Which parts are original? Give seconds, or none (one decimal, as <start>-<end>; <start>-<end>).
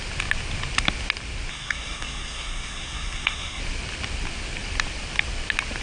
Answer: 0.0-1.5; 3.6-5.8